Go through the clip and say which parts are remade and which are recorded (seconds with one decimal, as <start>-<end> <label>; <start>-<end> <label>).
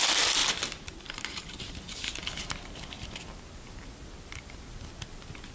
0.0-0.4 recorded; 0.4-1.6 remade; 1.6-5.5 recorded